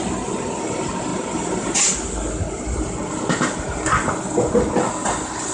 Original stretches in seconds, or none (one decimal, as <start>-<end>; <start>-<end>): 0.0-5.5